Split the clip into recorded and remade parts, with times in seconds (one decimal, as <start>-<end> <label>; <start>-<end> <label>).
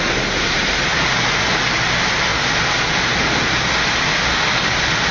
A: 0.0-5.1 recorded